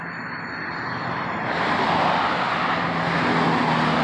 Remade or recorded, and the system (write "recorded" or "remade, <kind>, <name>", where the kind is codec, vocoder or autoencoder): recorded